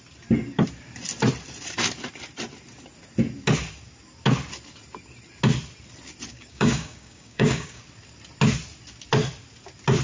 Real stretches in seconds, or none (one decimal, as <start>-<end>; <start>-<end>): 0.0-6.3; 7.8-10.0